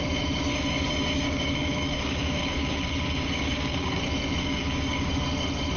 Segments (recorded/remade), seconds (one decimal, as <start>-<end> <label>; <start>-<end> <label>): 0.0-0.5 recorded; 0.5-4.0 remade; 4.0-4.4 recorded; 4.4-5.1 remade; 5.1-5.8 recorded